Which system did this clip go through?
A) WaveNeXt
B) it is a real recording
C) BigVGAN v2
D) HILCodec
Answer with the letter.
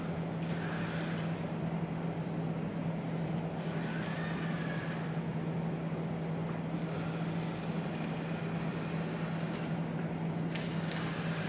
B